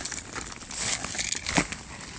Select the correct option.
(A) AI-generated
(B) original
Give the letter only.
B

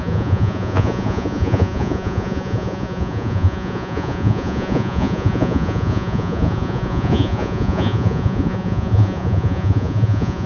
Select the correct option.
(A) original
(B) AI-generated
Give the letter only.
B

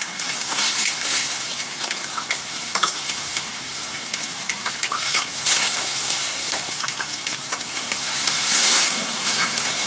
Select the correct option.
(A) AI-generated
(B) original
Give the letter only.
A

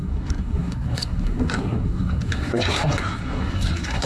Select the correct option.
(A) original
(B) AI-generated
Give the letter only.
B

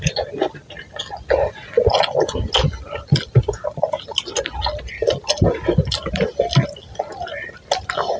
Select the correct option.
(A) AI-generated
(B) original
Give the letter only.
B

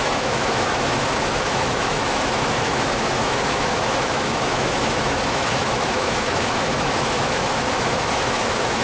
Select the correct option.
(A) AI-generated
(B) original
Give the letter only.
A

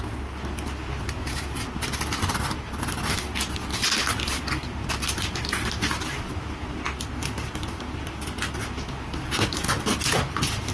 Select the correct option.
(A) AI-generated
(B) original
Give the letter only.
B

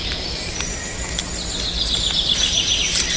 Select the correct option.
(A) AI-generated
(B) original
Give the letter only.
B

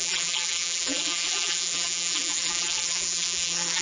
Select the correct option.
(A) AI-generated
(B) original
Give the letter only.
A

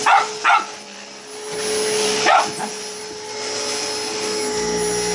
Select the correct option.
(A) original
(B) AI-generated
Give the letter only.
A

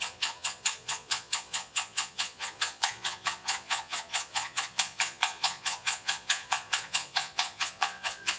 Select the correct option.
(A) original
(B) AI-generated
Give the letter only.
B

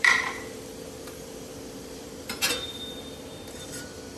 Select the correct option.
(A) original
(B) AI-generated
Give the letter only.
B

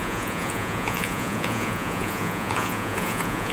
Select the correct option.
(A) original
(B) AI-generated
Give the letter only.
B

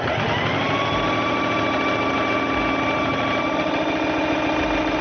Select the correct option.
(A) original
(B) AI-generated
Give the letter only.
A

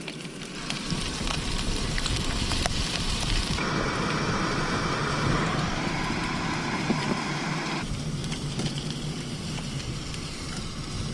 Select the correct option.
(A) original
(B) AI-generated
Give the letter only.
B